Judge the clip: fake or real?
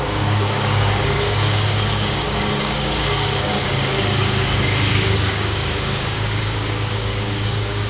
fake